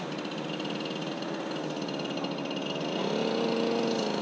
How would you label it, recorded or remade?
recorded